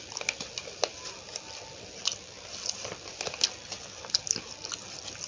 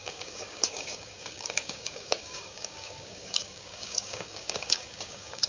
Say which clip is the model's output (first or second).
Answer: second